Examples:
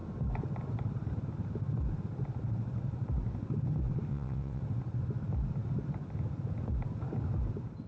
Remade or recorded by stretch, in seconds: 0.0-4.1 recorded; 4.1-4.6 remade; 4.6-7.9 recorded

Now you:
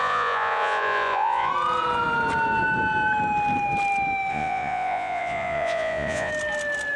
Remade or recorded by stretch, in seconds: 0.0-1.5 remade; 1.5-4.3 recorded; 4.3-6.3 remade; 6.3-7.0 recorded

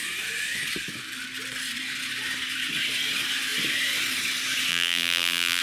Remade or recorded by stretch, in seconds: 0.0-4.7 recorded; 4.7-5.6 remade

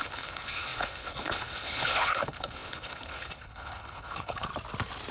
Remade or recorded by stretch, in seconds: 0.0-4.5 remade; 4.5-5.1 recorded